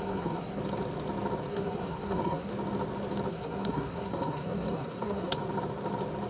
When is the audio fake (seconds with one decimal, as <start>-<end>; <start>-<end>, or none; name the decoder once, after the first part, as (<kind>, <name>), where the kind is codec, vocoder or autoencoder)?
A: 0.0-0.6 (codec, SNAC); 1.5-2.5; 3.3-5.4